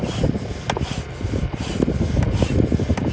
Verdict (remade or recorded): recorded